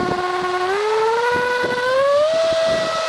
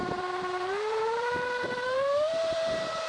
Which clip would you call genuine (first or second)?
first